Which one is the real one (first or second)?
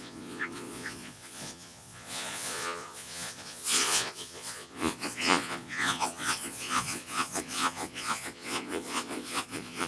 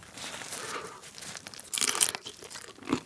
second